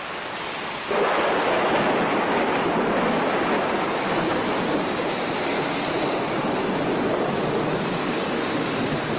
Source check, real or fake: real